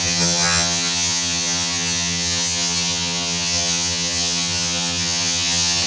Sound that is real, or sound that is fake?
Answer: fake